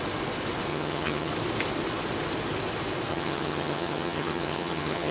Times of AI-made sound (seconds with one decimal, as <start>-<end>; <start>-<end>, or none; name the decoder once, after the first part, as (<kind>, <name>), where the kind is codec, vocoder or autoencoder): 0.7-1.3 (vocoder, HiFi-GAN); 3.1-5.1